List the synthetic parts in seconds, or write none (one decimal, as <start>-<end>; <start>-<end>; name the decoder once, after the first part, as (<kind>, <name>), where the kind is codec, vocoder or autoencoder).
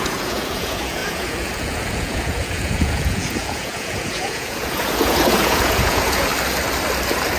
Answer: 0.0-6.3 (vocoder, Vocos)